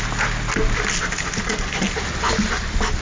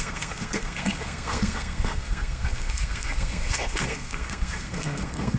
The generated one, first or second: second